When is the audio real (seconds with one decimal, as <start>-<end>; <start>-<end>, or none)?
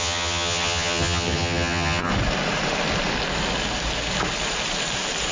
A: 2.1-5.3